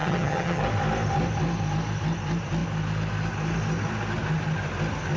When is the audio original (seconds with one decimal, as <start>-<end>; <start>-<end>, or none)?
0.6-5.2

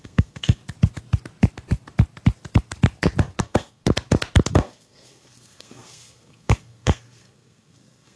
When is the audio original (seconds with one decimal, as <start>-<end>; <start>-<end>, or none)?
0.6-3.4; 3.8-4.5